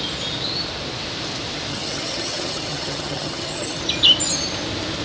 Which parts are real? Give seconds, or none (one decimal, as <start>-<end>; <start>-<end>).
0.0-1.7; 3.8-5.0